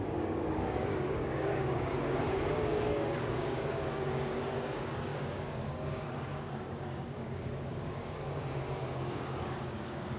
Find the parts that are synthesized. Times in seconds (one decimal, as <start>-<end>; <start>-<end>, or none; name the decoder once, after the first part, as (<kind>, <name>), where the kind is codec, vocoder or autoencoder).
0.0-10.2 (codec, DAC)